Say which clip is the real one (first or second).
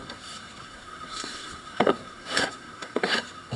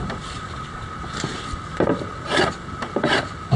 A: second